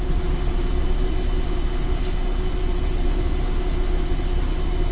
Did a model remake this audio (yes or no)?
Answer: no